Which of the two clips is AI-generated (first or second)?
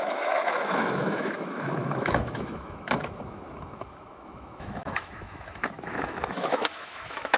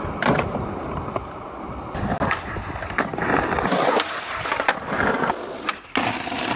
first